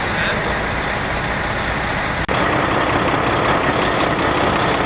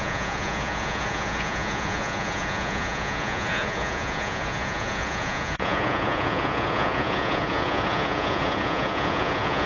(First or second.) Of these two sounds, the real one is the first